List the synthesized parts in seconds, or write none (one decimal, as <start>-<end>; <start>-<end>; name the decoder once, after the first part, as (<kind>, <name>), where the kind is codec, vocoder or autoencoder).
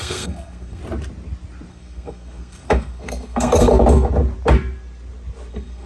0.0-0.8 (codec, SNAC); 1.7-3.7; 5.5-5.9